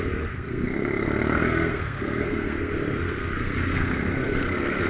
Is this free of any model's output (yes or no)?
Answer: no